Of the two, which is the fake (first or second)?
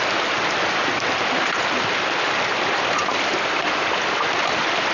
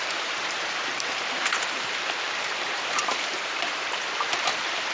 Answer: second